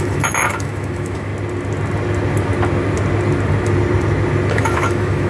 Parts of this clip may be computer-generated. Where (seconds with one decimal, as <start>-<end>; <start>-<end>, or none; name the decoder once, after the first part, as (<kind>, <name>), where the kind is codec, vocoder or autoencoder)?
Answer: 0.0-1.3 (autoencoder, DAC-VAE); 4.5-5.3